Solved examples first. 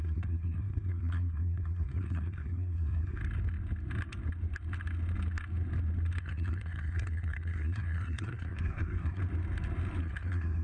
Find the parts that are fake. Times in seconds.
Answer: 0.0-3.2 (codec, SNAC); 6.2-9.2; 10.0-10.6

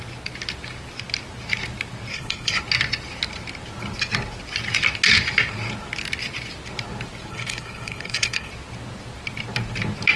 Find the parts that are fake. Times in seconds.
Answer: 2.1-2.6 (codec, HILCodec); 7.3-8.5